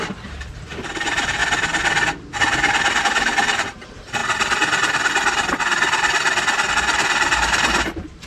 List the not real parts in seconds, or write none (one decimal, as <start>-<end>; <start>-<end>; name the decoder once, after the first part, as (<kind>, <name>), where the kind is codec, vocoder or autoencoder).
0.0-1.4 (vocoder, BigVGAN v2); 3.0-4.2; 6.7-8.3